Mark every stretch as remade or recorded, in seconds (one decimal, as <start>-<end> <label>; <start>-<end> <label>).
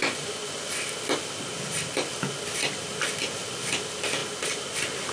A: 0.0-0.7 remade; 0.7-5.1 recorded